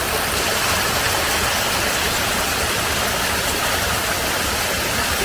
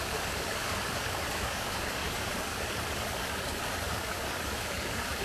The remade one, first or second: second